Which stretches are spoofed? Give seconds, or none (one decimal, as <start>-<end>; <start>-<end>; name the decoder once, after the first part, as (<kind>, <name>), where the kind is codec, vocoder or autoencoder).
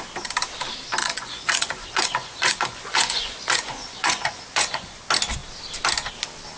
1.0-5.0 (vocoder, Vocos)